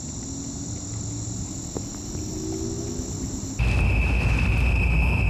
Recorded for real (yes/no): yes